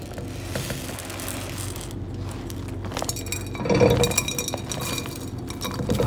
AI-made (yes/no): no